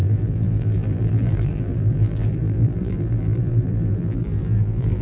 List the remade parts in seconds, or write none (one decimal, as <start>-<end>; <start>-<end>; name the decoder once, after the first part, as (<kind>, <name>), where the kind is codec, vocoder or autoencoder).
0.0-5.0 (vocoder, BigVGAN v2)